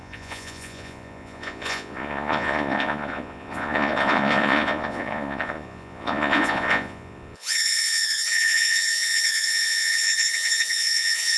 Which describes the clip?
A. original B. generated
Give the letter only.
B